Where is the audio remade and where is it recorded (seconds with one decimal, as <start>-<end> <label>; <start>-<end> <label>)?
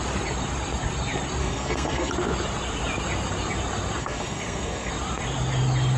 0.0-1.4 recorded; 1.4-2.1 remade; 2.1-4.0 recorded; 4.0-4.9 remade; 4.9-6.0 recorded